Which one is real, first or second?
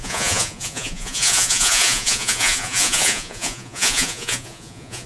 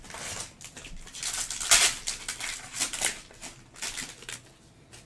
second